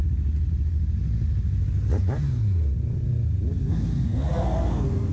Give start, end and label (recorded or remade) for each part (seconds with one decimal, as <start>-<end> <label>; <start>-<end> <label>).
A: 0.0-3.7 recorded; 3.7-5.1 remade

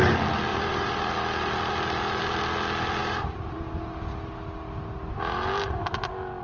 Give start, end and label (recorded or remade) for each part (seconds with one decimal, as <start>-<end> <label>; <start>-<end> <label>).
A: 0.0-0.5 recorded; 0.5-1.1 remade; 1.1-3.0 recorded; 3.0-3.6 remade; 3.6-6.4 recorded

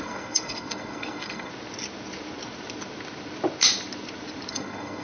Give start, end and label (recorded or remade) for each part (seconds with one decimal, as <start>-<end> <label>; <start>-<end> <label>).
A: 0.0-1.5 remade; 1.5-4.5 recorded; 4.5-5.0 remade

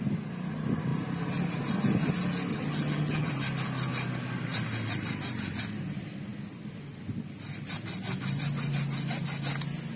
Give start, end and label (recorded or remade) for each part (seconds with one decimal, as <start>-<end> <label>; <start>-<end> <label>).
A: 0.0-2.5 recorded; 2.5-3.3 remade; 3.3-10.0 recorded

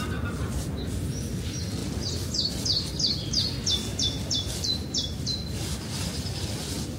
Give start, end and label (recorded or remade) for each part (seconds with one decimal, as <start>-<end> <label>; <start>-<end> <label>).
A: 0.0-7.0 recorded

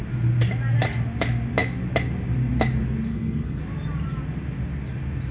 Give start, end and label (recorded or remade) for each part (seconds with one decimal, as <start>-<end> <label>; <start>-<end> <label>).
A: 0.0-3.1 recorded; 3.1-3.6 remade; 3.6-5.3 recorded